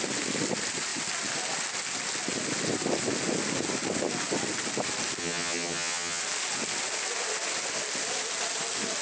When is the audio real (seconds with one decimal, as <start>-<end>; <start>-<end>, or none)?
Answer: 0.0-5.2; 6.2-9.0